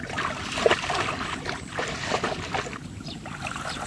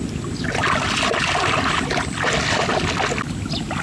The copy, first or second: first